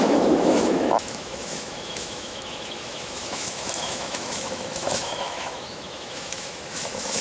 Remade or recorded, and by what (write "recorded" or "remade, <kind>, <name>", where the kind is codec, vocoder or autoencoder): remade, autoencoder, DAC-VAE